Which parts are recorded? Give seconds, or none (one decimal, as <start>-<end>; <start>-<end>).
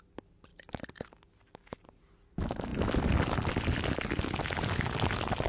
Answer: 0.0-5.5